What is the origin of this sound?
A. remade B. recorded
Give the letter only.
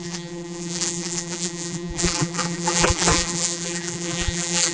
A